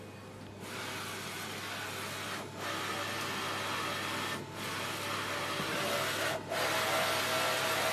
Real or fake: real